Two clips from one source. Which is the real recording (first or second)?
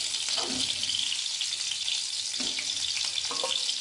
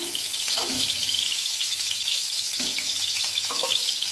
first